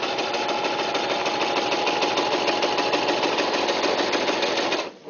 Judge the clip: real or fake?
real